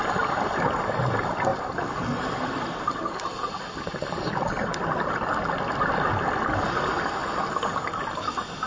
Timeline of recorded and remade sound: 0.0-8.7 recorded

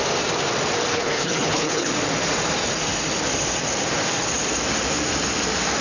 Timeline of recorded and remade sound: 0.0-0.9 recorded; 0.9-1.9 remade; 1.9-5.8 recorded